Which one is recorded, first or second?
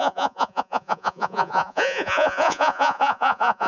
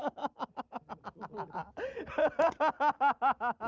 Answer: second